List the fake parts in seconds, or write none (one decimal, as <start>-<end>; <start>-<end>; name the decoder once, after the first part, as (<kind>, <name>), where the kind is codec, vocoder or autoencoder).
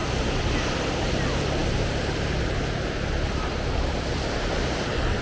0.0-1.0 (vocoder, BigVGAN v2)